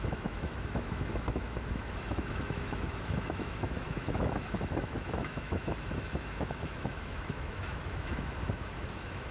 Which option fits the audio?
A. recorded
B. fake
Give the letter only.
B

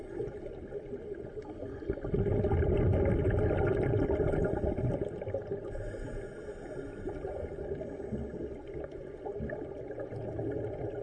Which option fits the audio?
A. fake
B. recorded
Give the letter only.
B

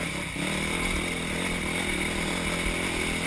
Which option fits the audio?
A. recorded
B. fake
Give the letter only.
A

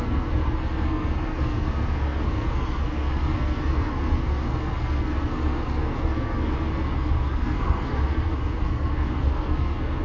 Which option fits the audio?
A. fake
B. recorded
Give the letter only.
A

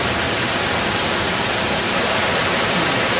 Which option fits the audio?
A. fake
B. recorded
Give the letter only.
B